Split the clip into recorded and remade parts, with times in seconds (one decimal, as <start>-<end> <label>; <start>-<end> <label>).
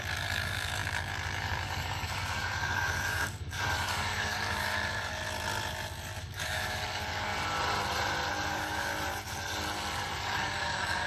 0.0-5.1 remade; 5.1-6.2 recorded; 6.2-7.3 remade; 7.3-8.5 recorded; 8.5-8.9 remade; 8.9-10.2 recorded; 10.2-11.1 remade